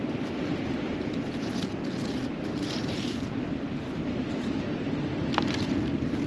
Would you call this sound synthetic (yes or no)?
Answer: no